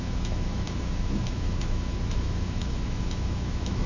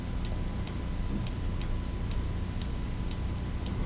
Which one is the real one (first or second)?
second